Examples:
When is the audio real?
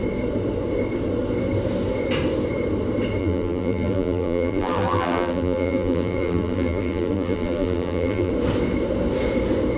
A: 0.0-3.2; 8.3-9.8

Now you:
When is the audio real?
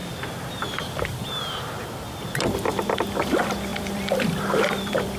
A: 1.4-3.7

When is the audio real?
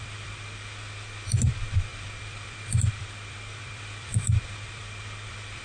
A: none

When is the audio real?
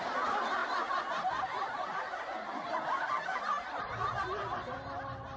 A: 0.6-3.8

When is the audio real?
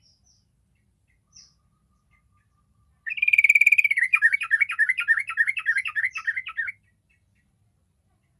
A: 0.0-4.1; 6.0-8.4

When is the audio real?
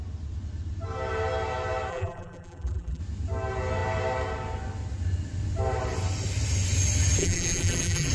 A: 0.0-1.9; 3.0-7.2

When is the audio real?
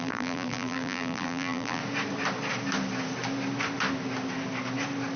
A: 1.8-5.2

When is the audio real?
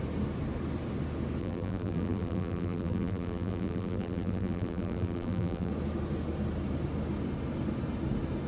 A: 0.0-1.4; 5.7-8.5